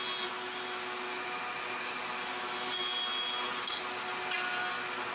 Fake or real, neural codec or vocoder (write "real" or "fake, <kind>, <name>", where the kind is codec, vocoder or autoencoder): real